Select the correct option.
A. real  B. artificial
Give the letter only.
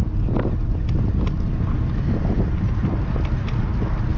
A